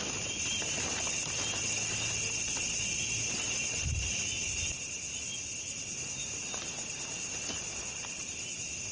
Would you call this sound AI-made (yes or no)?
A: no